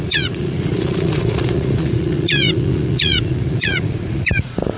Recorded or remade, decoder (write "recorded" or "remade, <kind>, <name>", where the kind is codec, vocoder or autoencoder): remade, vocoder, Vocos